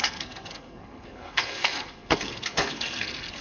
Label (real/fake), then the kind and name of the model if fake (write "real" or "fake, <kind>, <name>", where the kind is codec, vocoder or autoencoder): fake, codec, SNAC